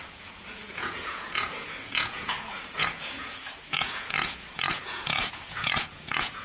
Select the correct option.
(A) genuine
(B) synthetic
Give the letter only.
B